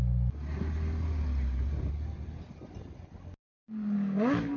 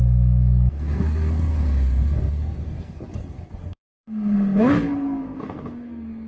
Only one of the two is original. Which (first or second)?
first